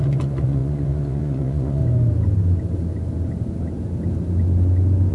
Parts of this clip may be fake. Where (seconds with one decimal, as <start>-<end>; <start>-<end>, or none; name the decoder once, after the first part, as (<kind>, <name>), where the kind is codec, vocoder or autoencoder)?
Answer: 0.0-1.8 (vocoder, Vocos)